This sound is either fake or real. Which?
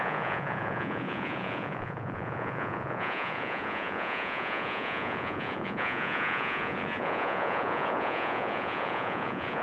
fake